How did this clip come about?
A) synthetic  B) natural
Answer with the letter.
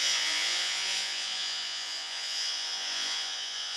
A